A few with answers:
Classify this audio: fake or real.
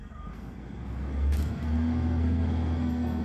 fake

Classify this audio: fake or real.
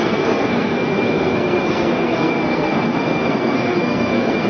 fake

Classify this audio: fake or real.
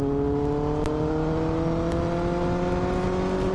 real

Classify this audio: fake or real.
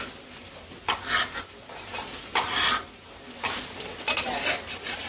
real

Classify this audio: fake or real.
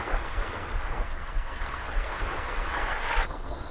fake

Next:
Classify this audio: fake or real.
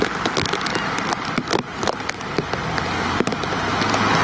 real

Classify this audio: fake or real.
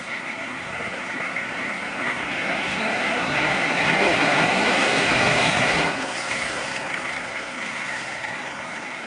fake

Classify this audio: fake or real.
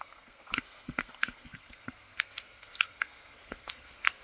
fake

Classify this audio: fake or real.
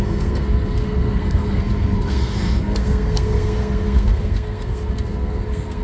fake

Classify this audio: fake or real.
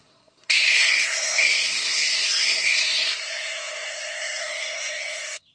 fake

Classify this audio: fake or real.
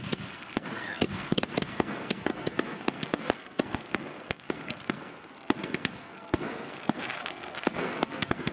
fake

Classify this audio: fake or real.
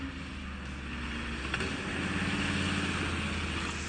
real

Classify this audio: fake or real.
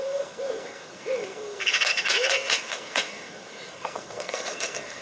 fake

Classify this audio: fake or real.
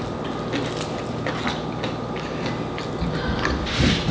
real